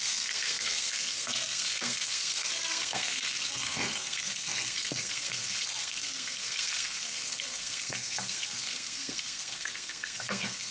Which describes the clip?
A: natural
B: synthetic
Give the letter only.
B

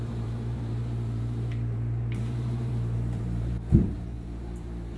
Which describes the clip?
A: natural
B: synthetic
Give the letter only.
B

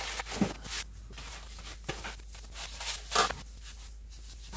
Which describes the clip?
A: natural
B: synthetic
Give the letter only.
A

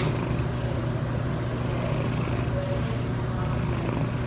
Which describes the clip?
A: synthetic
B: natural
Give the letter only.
B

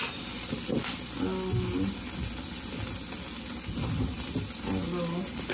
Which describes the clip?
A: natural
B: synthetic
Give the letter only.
A